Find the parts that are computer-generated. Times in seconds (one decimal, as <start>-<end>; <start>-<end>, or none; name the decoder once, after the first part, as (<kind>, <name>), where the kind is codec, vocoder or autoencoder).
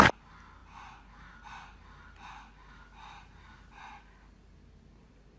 none